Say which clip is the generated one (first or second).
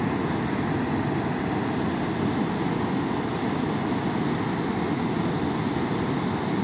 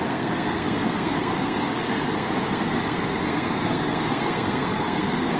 second